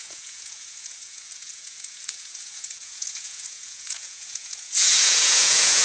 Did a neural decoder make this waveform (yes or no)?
yes